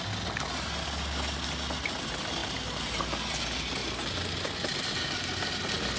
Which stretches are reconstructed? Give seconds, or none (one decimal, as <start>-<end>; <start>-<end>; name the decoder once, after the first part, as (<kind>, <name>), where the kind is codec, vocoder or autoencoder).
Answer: 2.4-3.4 (vocoder, BigVGAN v2); 3.8-5.2

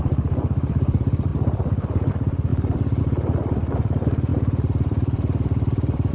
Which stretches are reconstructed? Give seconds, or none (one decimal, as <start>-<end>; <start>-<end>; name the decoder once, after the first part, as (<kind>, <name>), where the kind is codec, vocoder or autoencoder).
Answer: 0.0-6.1 (vocoder, BigVGAN v2)

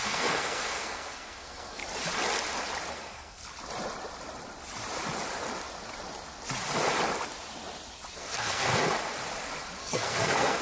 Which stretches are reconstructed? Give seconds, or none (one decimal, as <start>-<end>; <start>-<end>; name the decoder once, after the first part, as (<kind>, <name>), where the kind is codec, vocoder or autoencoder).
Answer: 0.0-1.8 (codec, SNAC); 2.9-3.4; 8.1-8.7; 9.8-10.6

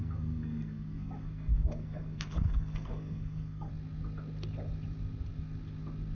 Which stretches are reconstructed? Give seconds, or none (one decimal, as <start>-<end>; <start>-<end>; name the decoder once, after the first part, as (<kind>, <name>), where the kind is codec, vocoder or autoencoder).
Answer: 0.0-3.7 (codec, SNAC)

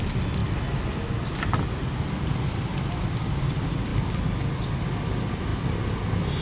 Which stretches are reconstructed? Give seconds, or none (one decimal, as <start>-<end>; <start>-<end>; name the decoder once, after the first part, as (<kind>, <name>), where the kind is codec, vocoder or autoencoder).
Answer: none

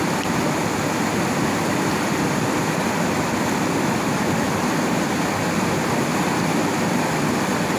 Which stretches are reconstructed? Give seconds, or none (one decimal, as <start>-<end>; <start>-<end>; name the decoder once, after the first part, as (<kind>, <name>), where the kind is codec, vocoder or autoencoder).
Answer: 0.0-0.6 (vocoder, BigVGAN v2); 5.3-6.6; 7.2-7.8